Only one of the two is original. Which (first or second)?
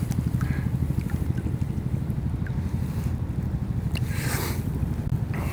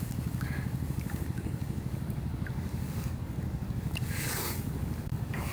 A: first